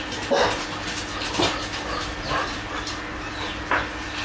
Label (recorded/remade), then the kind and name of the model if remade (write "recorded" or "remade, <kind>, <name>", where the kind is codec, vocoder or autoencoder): recorded